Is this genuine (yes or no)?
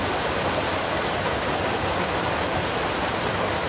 no